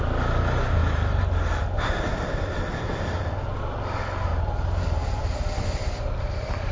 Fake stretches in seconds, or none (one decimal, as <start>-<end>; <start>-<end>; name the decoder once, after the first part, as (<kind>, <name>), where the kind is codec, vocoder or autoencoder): none